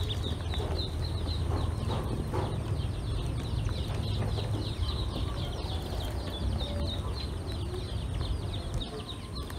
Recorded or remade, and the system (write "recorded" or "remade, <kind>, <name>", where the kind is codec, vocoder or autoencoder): recorded